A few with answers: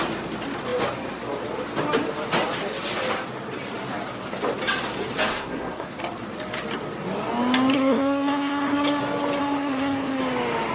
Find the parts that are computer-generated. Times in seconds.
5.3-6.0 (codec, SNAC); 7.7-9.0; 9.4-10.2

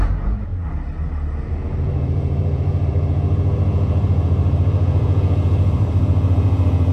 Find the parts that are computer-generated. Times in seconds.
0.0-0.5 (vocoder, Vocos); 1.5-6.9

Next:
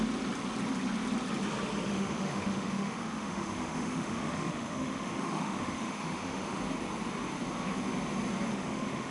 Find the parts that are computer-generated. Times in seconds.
1.9-6.6 (autoencoder, DAC-VAE); 8.5-9.1